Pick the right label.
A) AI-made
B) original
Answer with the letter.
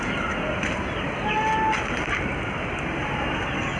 B